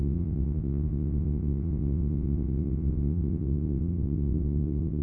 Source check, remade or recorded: remade